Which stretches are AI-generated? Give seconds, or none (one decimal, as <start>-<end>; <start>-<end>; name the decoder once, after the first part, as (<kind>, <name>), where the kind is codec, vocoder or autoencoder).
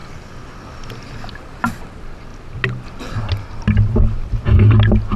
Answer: none